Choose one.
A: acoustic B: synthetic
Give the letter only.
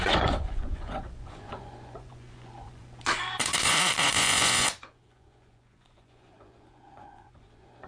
B